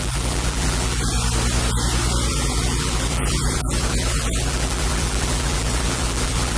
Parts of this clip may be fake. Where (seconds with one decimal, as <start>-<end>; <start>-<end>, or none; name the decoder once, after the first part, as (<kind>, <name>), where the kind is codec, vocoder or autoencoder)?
0.0-1.1 (vocoder, BigVGAN v2); 2.3-6.6